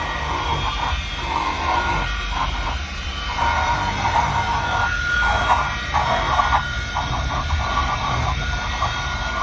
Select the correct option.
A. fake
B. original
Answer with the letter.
A